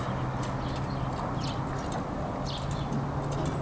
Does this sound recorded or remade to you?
recorded